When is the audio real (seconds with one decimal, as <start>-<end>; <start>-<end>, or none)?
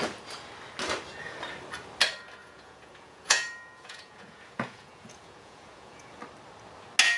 0.0-2.4; 6.2-7.2